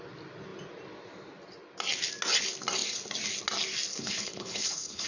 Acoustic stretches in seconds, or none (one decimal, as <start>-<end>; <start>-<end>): 0.0-3.9